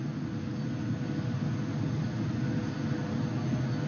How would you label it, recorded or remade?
recorded